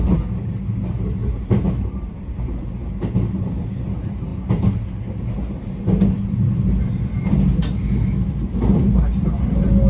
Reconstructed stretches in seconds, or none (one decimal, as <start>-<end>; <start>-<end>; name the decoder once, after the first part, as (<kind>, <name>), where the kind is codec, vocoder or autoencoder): 1.2-3.8 (vocoder, BigVGAN v2)